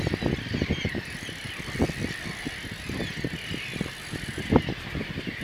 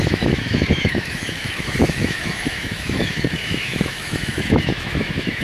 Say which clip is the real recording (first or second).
first